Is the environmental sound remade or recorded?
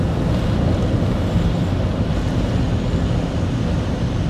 recorded